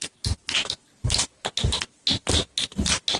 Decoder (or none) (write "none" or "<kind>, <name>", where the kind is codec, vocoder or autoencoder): none